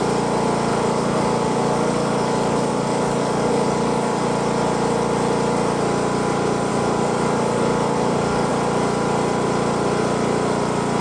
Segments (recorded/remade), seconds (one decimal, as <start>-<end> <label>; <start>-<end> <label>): 0.0-0.7 recorded; 0.7-4.2 remade; 4.2-6.7 recorded; 6.7-8.5 remade; 8.5-11.0 recorded